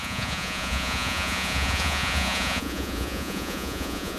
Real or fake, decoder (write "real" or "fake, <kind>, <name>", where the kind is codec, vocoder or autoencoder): fake, vocoder, Vocos